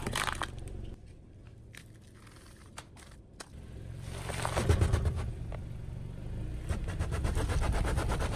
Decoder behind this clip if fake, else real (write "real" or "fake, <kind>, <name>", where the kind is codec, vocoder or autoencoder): fake, vocoder, BigVGAN v2